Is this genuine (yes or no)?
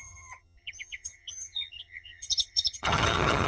no